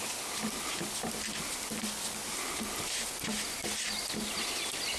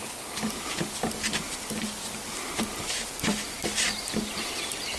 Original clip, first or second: first